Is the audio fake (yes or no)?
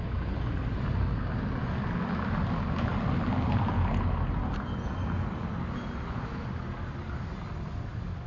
no